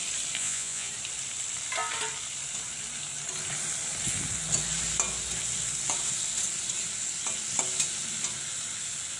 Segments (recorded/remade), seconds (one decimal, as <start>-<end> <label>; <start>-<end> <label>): 0.0-0.4 recorded; 0.4-0.9 remade; 0.9-9.2 recorded